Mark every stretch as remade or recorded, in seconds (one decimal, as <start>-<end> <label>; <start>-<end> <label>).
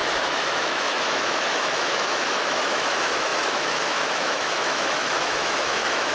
0.0-6.1 remade